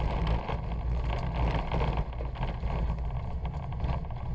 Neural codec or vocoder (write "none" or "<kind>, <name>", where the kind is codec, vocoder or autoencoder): none